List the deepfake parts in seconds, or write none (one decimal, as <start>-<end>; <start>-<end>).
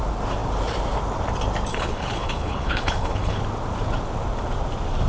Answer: 1.7-3.4